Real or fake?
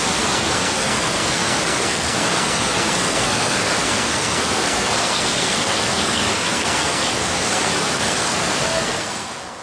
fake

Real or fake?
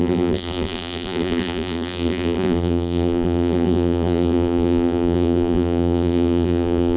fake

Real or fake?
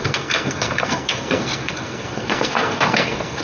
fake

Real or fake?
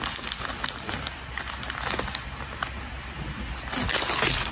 real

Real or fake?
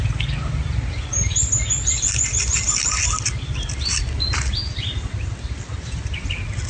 real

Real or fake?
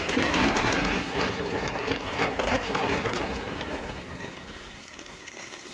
fake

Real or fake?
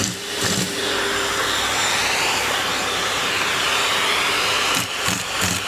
fake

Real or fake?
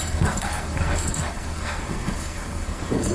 fake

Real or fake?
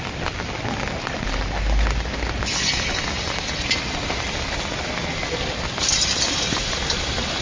real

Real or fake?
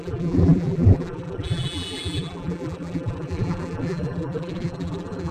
fake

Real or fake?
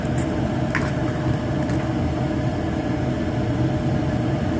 real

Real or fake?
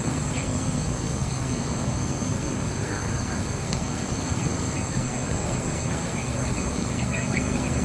fake